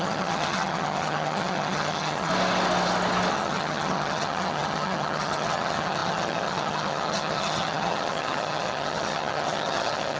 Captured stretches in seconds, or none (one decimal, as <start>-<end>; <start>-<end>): 2.3-3.3